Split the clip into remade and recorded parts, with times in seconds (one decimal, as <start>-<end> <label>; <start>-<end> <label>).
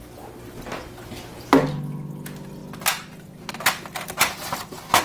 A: 0.0-5.0 recorded